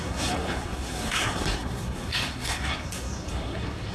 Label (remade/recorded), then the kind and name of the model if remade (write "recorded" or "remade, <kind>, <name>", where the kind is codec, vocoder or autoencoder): remade, codec, SNAC